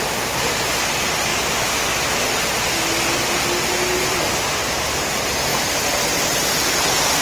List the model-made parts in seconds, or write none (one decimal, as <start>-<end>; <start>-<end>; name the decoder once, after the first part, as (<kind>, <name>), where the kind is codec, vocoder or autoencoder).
none